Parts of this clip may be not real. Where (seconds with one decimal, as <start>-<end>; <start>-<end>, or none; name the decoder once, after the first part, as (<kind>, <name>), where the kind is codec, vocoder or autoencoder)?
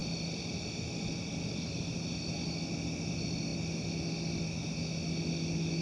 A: none